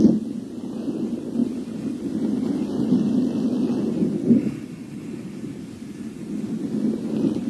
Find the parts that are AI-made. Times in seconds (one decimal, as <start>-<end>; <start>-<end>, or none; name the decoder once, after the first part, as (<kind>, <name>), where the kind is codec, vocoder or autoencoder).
none